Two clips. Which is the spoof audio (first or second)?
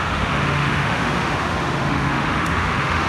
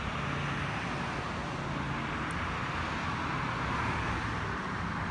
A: first